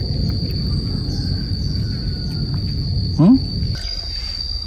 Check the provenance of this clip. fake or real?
real